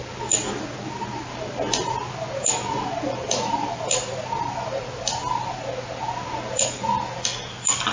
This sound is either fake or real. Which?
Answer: real